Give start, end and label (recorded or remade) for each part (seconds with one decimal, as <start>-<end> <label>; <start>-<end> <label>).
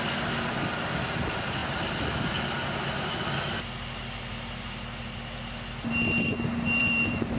0.0-6.8 recorded; 6.8-7.4 remade